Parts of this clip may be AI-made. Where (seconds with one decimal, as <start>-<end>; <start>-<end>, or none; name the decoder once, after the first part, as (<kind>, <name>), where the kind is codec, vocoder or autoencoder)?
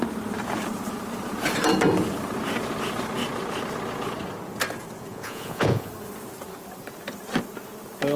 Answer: 5.1-5.9 (vocoder, Vocos)